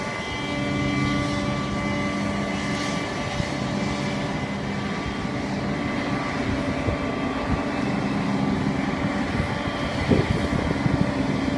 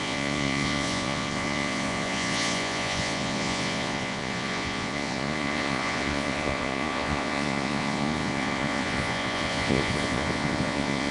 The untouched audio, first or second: first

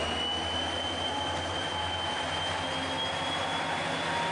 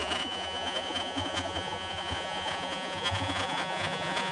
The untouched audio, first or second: first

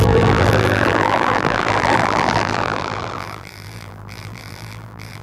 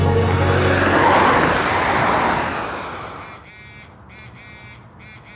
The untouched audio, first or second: second